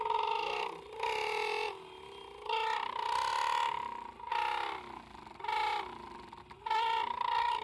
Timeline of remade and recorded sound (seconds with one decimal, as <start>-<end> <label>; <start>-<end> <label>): 0.0-7.6 recorded

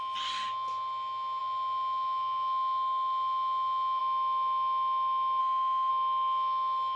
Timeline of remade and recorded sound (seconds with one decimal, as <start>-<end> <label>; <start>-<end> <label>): 0.0-5.4 recorded; 5.4-5.9 remade; 5.9-7.0 recorded